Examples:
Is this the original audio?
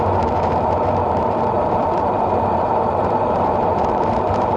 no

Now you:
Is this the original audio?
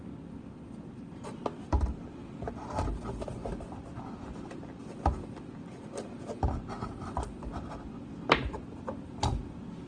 yes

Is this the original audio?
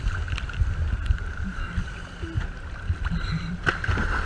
yes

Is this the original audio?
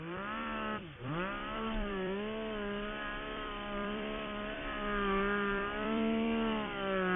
no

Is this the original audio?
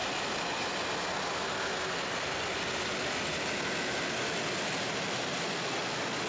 yes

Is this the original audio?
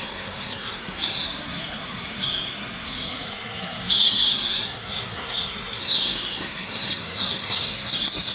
no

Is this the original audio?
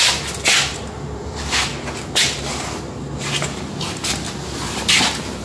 yes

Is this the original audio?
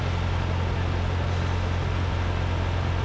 yes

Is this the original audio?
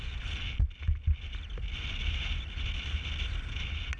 yes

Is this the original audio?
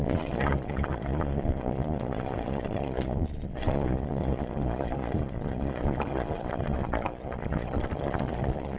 no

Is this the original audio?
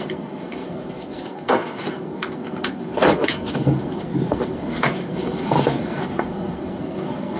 no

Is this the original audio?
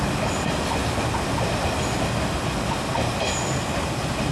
yes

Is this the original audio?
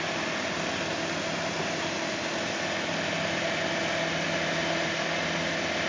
yes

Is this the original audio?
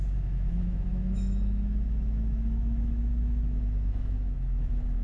no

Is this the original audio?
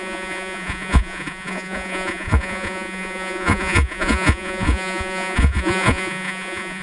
no